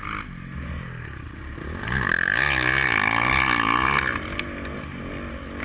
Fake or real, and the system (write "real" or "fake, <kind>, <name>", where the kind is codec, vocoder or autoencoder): real